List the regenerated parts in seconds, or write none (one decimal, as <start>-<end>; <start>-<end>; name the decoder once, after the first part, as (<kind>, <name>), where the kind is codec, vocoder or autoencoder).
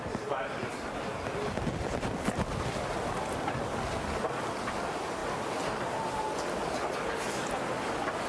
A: none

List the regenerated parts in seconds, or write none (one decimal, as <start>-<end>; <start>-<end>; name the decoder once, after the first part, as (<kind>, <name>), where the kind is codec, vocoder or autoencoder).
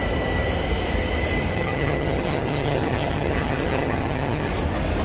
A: 1.5-4.5 (vocoder, HiFi-GAN)